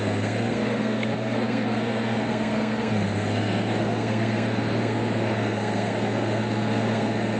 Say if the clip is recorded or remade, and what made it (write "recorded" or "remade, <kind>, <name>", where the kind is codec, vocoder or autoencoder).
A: remade, codec, SNAC